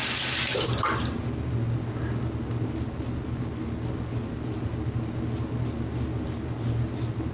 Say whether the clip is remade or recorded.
recorded